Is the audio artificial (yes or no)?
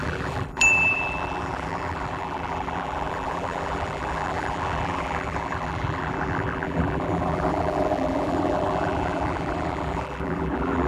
yes